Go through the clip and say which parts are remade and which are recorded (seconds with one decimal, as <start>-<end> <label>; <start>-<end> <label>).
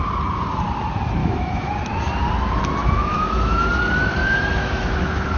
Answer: 0.0-1.2 recorded; 1.2-1.7 remade; 1.7-2.8 recorded; 2.8-3.7 remade; 3.7-4.2 recorded; 4.2-5.4 remade